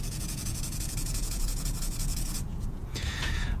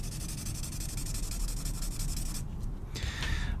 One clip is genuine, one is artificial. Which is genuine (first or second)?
second